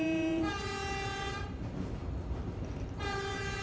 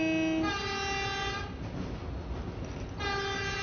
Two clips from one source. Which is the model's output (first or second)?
first